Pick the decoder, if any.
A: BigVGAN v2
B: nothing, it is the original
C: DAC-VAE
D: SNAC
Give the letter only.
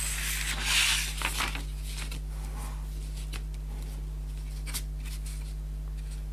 B